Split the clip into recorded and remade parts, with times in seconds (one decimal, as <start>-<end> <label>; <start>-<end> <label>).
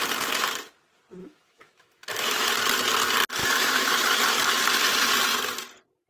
0.0-1.2 recorded; 1.2-2.5 remade; 2.5-3.4 recorded; 3.4-4.2 remade; 4.2-6.1 recorded